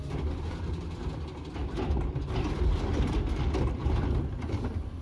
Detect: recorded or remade recorded